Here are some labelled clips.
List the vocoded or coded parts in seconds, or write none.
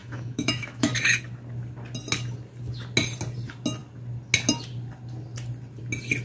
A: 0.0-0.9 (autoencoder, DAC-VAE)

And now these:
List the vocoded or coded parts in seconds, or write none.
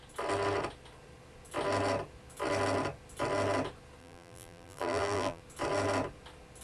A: 4.0-5.4 (vocoder, BigVGAN v2)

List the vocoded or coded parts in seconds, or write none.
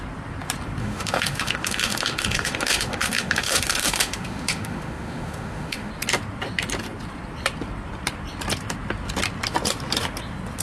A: 0.8-5.9 (autoencoder, DAC-VAE)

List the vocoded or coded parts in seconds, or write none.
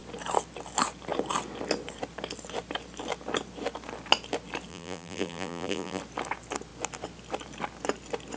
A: 4.7-6.0 (vocoder, BigVGAN v2)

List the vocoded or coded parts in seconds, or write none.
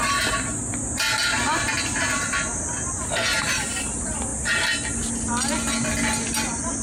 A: none